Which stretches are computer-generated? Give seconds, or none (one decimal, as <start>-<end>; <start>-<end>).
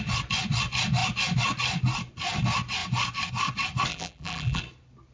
3.9-4.6